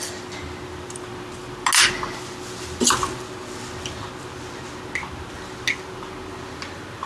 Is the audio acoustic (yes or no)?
yes